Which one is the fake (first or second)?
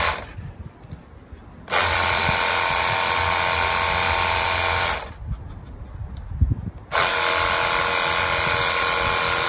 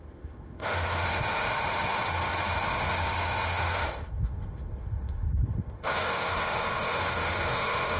second